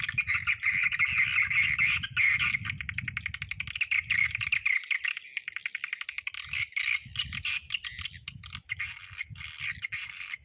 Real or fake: real